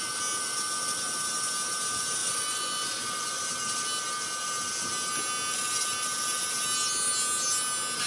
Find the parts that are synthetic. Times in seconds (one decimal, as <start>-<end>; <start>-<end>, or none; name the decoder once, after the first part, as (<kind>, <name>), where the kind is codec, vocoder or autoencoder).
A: 2.2-3.5 (vocoder, Vocos)